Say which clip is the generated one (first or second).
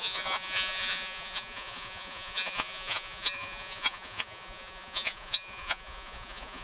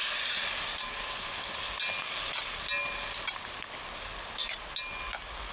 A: first